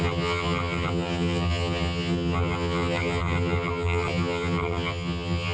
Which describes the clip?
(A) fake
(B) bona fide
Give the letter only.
A